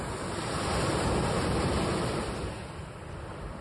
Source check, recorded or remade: recorded